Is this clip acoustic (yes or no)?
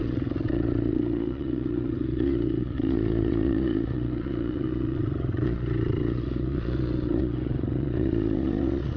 no